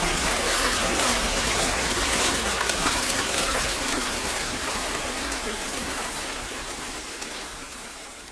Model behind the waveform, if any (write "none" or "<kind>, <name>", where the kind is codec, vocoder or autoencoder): codec, SNAC